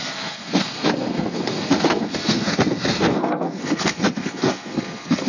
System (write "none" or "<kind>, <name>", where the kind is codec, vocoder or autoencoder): codec, SNAC